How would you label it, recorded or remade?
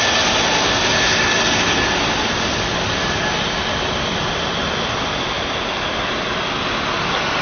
recorded